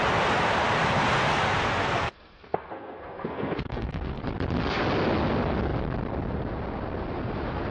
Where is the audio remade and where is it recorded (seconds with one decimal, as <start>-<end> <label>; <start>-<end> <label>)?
0.0-1.8 recorded; 1.8-4.2 remade; 4.2-7.7 recorded